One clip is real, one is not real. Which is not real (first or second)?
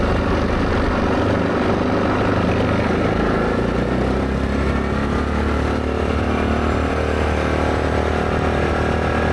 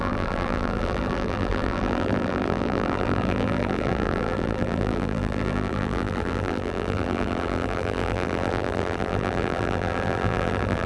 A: second